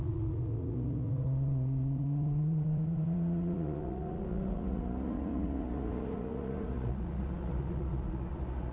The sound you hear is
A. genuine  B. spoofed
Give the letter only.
B